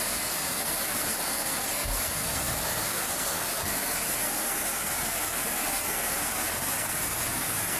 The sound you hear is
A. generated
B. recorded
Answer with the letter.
A